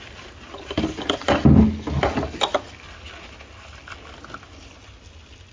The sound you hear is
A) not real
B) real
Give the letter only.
B